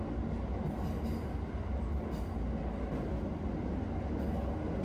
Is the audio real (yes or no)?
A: yes